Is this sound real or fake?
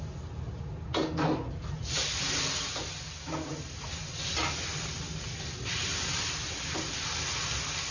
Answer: real